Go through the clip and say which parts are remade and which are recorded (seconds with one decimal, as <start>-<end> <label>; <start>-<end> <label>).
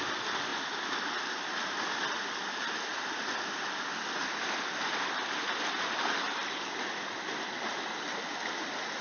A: 0.0-9.0 recorded